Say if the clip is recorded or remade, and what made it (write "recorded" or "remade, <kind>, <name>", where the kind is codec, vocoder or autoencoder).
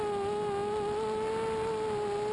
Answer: recorded